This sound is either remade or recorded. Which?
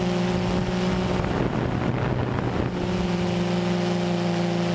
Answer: recorded